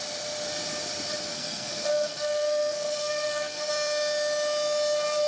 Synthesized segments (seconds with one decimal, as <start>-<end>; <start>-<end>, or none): 1.3-3.7